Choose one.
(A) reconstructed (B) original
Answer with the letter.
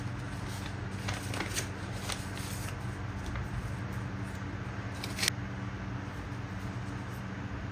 B